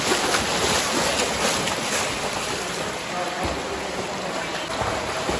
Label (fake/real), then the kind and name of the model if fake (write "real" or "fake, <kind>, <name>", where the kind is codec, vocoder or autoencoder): real